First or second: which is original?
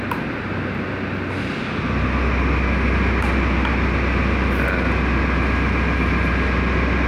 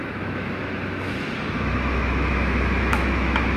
first